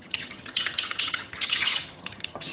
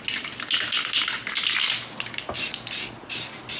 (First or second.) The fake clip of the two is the first